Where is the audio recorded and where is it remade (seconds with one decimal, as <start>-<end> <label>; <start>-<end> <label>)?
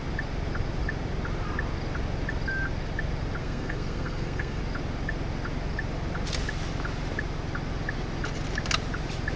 0.0-3.4 recorded; 3.4-4.6 remade; 4.6-9.4 recorded